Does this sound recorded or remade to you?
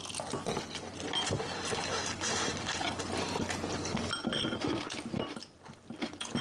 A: recorded